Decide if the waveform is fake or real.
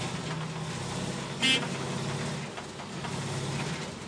real